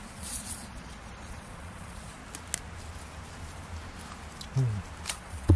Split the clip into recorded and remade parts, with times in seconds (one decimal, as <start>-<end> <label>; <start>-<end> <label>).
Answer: 0.0-2.2 remade; 2.2-5.1 recorded; 5.1-5.6 remade